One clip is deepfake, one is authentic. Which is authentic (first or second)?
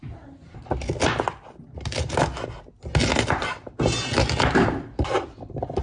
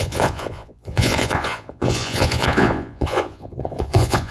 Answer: first